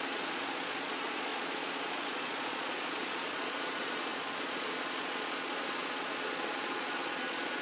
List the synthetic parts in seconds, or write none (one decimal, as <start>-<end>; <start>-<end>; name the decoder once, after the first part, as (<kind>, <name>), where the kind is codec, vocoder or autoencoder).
0.0-7.6 (vocoder, Vocos)